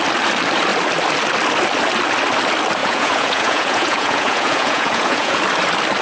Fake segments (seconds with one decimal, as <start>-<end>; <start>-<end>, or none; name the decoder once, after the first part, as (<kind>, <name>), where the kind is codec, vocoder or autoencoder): 2.8-5.4 (vocoder, Vocos)